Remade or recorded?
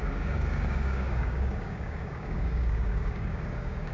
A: remade